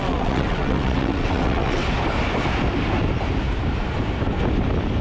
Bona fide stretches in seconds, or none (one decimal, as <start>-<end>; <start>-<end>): 1.8-5.0